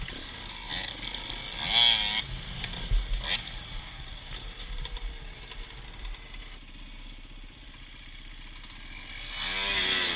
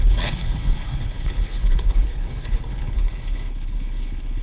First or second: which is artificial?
second